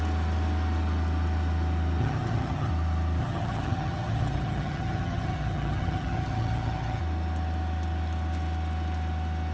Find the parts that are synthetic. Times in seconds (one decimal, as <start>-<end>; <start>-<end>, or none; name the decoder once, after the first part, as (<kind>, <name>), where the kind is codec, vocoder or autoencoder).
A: 2.0-2.7 (vocoder, HiFi-GAN); 3.2-7.0